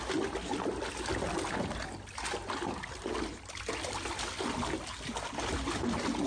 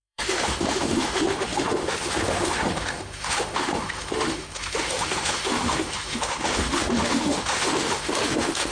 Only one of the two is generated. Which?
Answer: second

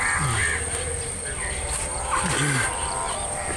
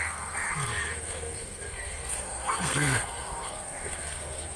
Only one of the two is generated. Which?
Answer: second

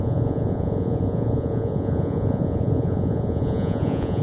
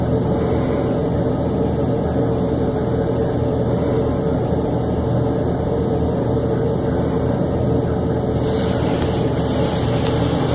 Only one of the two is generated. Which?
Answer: first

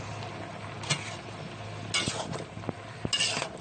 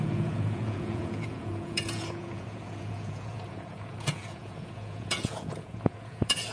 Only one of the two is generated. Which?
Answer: second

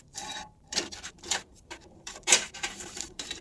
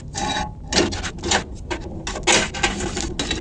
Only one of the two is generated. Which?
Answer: first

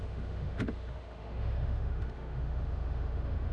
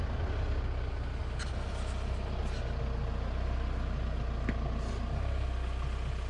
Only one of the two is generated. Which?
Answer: first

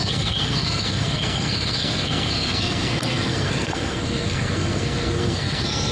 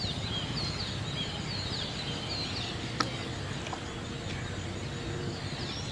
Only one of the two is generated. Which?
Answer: first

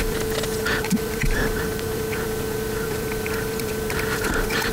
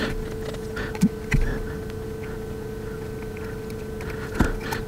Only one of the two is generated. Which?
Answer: first